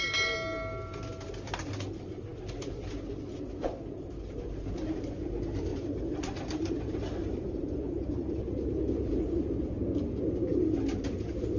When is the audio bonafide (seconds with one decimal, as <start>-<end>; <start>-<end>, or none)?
0.0-5.7; 8.4-11.6